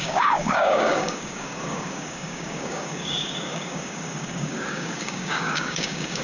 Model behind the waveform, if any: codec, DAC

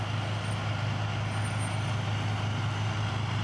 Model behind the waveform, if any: none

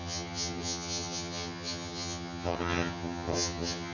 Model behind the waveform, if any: vocoder, HiFi-GAN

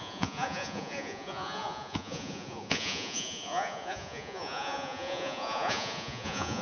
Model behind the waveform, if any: vocoder, Vocos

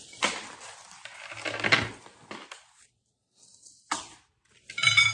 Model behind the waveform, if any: none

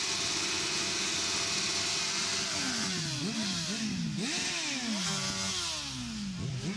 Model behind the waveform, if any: none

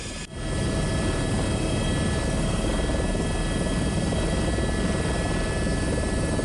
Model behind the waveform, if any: none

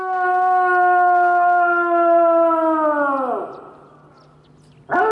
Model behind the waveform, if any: none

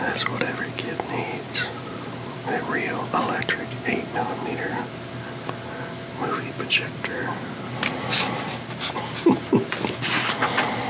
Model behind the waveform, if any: none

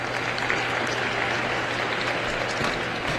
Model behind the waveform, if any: none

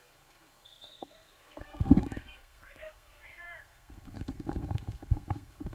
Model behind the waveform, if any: codec, SNAC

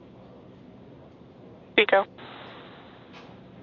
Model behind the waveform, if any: none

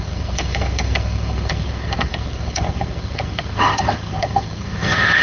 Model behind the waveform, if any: codec, SNAC